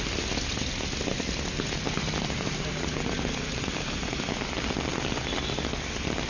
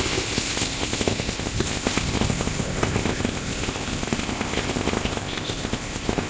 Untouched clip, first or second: first